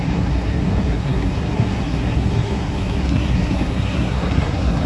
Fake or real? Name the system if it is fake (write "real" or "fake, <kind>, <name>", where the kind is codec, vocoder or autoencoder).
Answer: fake, codec, SNAC